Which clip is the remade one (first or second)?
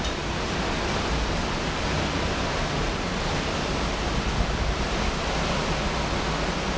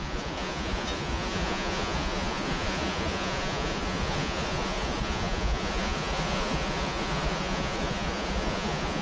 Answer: second